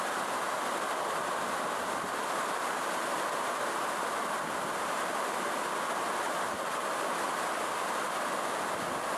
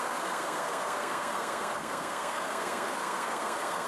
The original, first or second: first